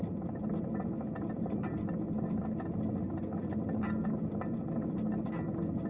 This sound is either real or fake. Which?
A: real